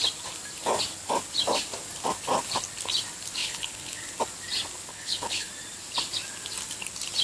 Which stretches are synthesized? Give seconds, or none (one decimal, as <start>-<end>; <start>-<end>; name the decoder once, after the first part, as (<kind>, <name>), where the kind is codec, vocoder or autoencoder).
3.4-4.0 (codec, HILCodec); 4.9-5.5